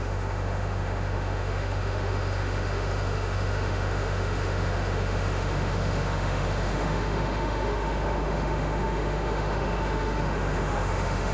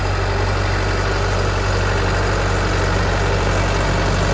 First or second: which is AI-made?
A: first